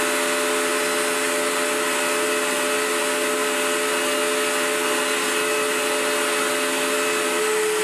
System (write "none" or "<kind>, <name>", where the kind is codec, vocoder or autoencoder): none